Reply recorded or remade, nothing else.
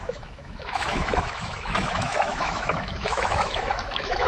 remade